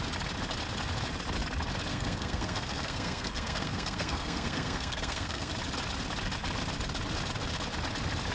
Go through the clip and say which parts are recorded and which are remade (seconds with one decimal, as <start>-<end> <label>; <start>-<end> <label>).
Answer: 0.0-1.9 recorded; 1.9-5.5 remade; 5.5-8.3 recorded